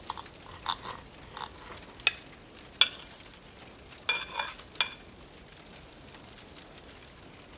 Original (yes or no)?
yes